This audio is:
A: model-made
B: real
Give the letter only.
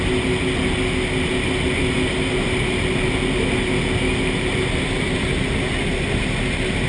B